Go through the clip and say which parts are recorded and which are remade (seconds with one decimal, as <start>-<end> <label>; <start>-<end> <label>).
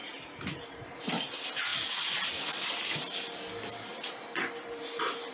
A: 0.0-1.1 remade; 1.1-5.3 recorded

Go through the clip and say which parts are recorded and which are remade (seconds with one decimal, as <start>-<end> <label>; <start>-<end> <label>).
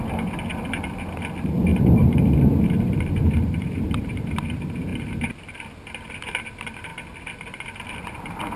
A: 0.0-1.7 recorded; 1.7-4.3 remade; 4.3-8.6 recorded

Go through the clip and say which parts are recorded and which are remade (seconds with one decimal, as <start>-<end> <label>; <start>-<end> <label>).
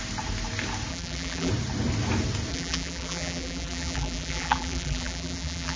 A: 0.0-0.9 recorded; 0.9-1.5 remade; 1.5-2.5 recorded; 2.5-5.8 remade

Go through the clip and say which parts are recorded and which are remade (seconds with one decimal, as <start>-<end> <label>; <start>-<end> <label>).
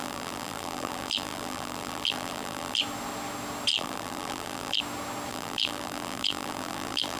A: 0.0-2.8 remade; 2.8-3.7 recorded; 3.7-4.8 remade; 4.8-5.3 recorded; 5.3-7.2 remade